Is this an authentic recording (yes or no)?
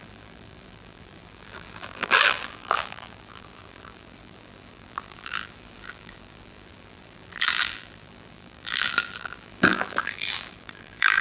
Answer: no